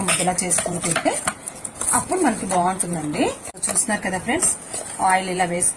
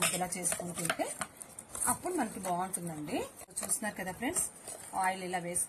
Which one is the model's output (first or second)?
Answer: first